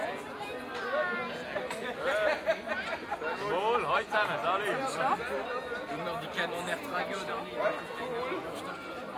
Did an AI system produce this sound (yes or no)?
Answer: no